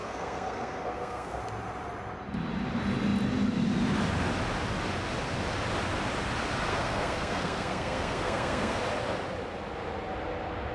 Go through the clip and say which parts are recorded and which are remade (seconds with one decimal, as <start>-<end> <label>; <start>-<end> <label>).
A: 0.0-1.4 remade; 1.4-6.7 recorded; 6.7-8.8 remade; 8.8-10.7 recorded